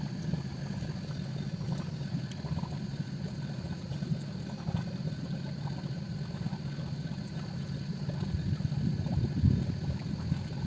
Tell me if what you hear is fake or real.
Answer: fake